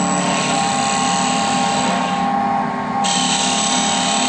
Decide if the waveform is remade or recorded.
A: recorded